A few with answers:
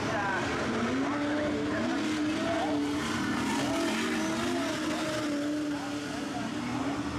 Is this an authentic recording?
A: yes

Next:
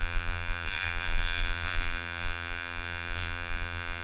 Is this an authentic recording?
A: no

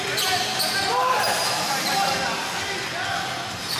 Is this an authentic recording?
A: yes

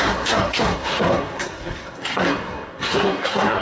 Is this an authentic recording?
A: no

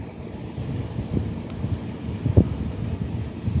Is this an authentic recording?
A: yes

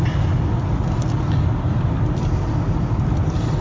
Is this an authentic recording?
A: yes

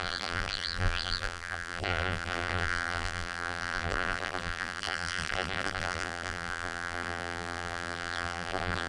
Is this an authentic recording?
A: no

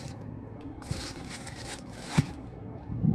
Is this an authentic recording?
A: no